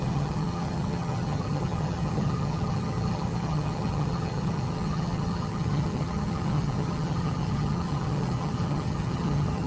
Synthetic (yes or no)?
yes